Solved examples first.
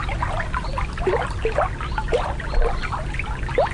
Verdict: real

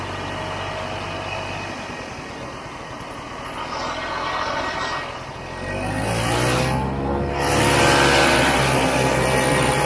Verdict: real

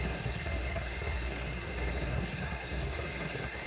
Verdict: fake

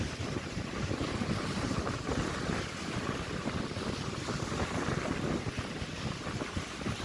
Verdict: real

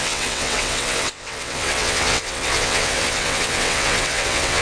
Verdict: fake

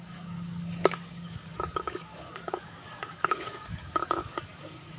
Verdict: fake